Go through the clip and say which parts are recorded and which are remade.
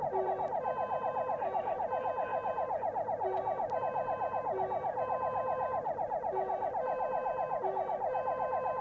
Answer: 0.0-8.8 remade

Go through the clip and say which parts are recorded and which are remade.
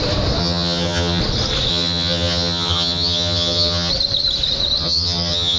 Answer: 0.0-0.4 recorded; 0.4-1.2 remade; 1.2-1.7 recorded; 1.7-3.9 remade; 3.9-4.8 recorded; 4.8-5.6 remade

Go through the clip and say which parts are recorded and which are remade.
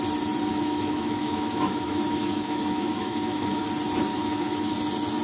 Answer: 0.0-0.5 recorded; 0.5-3.6 remade; 3.6-4.1 recorded; 4.1-4.7 remade; 4.7-5.2 recorded